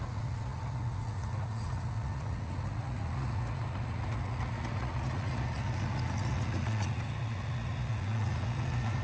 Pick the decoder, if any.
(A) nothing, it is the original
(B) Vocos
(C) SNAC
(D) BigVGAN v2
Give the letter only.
B